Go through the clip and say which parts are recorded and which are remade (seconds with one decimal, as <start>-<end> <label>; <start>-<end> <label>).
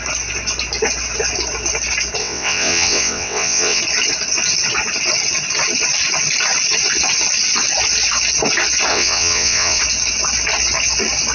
0.0-2.2 recorded; 2.2-3.8 remade; 3.8-8.9 recorded; 8.9-9.8 remade; 9.8-11.3 recorded